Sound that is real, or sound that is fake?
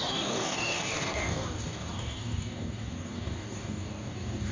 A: fake